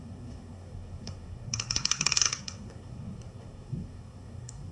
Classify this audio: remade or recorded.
remade